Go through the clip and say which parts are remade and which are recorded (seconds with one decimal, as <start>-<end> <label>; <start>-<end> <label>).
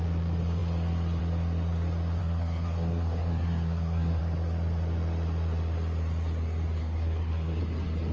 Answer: 0.0-2.2 recorded; 2.2-4.2 remade; 4.2-6.8 recorded; 6.8-7.6 remade; 7.6-8.1 recorded